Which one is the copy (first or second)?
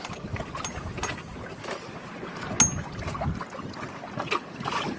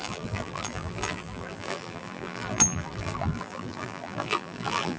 second